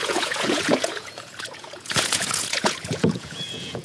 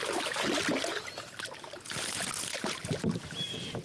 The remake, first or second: first